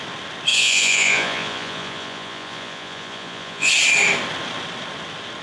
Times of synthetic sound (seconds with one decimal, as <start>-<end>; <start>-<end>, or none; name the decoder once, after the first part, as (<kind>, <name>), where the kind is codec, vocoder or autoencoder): 0.5-3.7 (vocoder, Vocos)